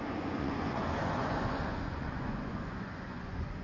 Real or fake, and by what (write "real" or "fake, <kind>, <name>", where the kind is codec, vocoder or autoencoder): fake, vocoder, Vocos